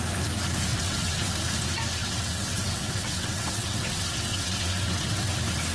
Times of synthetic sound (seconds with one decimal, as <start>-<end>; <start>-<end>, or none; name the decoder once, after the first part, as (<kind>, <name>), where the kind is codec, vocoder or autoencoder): 0.7-1.3 (vocoder, WaveNeXt); 2.0-5.3